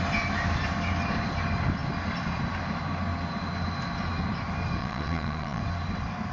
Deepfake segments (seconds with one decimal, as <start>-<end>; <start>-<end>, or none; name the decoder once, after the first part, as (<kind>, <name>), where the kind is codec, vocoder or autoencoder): 4.8-5.6 (vocoder, Vocos)